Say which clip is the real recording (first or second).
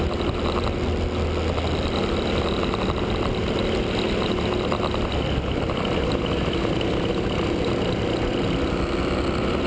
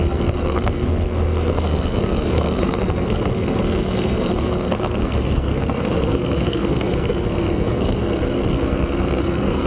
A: first